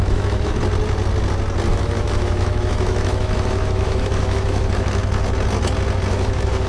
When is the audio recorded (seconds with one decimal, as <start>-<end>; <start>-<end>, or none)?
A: 0.6-1.7; 5.0-6.1